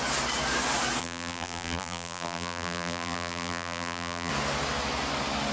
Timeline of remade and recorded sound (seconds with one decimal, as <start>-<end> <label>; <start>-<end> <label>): 0.0-1.0 recorded; 1.0-4.3 remade; 4.3-5.5 recorded